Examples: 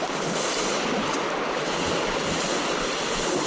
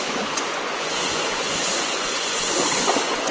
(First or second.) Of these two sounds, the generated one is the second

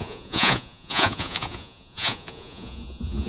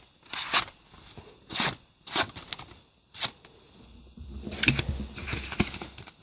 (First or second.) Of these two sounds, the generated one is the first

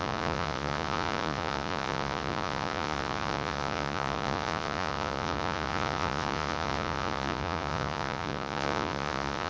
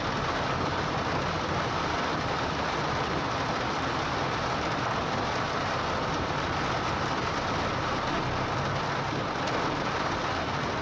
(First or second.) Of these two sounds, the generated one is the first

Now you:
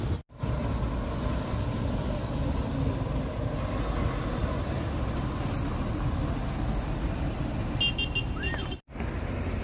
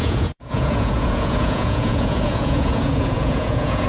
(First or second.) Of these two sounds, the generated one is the second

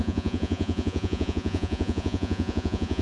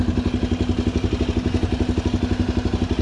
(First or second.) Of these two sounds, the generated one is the first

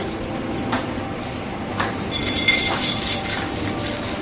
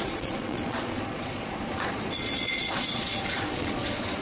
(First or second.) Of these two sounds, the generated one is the second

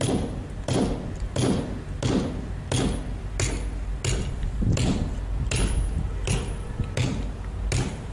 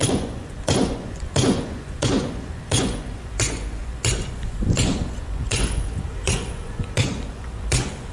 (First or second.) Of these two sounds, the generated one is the second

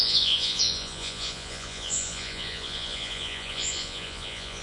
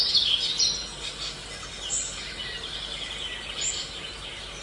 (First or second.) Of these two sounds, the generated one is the first